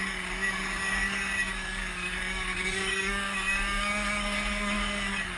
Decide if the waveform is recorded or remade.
remade